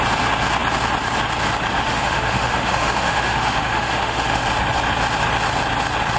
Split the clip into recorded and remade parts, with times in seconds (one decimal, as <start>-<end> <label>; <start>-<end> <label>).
0.0-1.7 recorded; 1.7-4.4 remade; 4.4-6.2 recorded